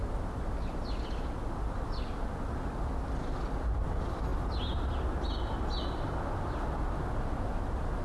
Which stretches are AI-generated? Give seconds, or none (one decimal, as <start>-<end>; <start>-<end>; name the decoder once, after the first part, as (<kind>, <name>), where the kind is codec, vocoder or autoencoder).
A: none